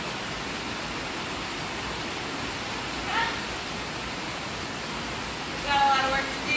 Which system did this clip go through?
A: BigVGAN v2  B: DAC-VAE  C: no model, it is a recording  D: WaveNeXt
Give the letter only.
C